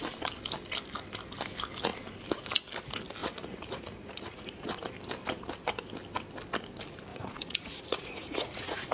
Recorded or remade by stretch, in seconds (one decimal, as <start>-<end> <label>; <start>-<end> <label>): 0.0-3.2 recorded; 3.2-4.8 remade; 4.8-7.1 recorded; 7.1-8.9 remade